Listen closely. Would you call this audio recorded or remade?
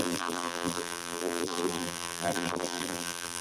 remade